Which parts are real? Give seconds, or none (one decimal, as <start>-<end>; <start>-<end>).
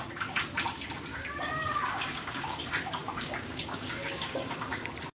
0.0-1.1; 2.6-3.0; 4.8-5.2